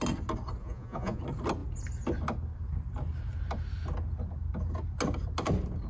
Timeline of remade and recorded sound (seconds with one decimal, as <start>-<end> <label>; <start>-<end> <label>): 0.0-0.6 recorded; 0.6-1.2 remade; 1.2-5.9 recorded